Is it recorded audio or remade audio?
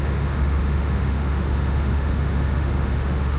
remade